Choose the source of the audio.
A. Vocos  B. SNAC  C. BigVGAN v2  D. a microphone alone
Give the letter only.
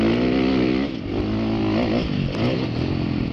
D